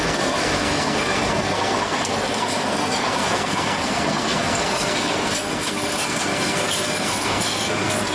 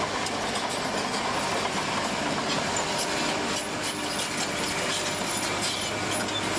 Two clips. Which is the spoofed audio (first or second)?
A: first